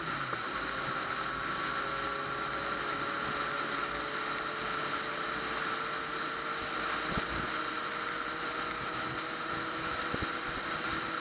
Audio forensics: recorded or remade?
recorded